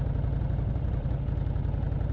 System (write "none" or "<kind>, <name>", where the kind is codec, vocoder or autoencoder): none